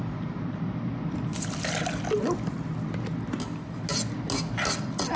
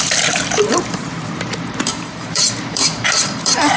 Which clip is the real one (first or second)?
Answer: first